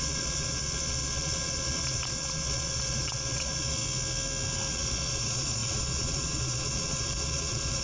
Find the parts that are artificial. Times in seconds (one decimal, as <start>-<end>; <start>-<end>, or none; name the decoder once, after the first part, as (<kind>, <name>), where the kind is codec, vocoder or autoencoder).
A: 0.0-3.8 (vocoder, Vocos); 4.7-7.8

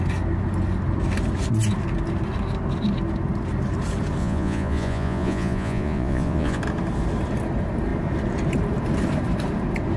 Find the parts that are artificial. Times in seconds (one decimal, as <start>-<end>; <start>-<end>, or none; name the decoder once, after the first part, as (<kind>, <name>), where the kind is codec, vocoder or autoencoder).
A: 4.2-6.6 (vocoder, Vocos)